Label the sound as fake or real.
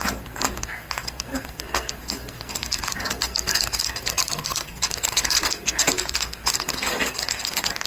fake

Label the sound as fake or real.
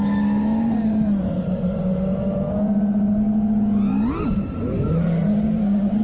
real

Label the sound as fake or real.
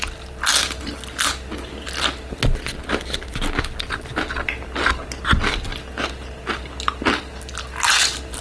real